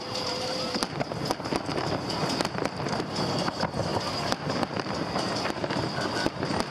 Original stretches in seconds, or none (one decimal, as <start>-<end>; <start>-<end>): 0.0-1.7; 3.3-6.7